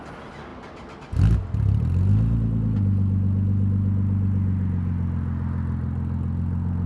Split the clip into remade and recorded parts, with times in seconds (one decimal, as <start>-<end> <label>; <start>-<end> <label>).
0.0-6.9 recorded